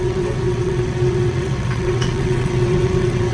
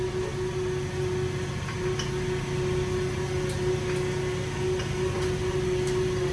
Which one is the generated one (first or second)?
first